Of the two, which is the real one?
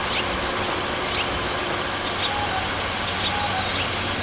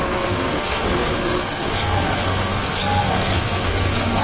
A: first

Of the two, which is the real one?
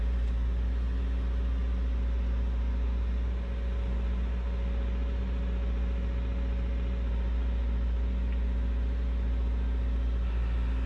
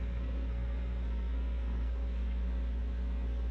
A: first